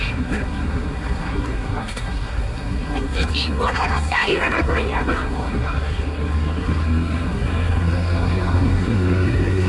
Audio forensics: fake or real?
fake